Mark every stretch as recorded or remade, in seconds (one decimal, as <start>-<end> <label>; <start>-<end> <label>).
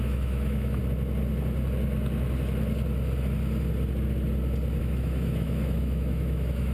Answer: 0.0-0.8 remade; 0.8-4.8 recorded; 4.8-6.7 remade